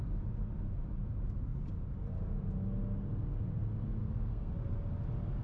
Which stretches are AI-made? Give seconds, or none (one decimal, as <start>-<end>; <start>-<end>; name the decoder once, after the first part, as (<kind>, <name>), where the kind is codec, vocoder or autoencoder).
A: 4.0-4.5 (codec, SNAC)